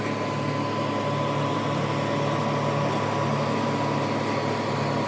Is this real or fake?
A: real